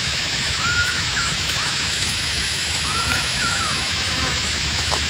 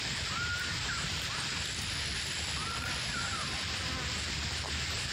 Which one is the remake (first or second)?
first